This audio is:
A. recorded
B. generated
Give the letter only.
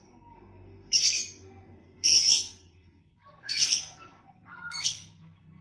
B